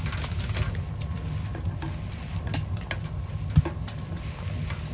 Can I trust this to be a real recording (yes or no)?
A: yes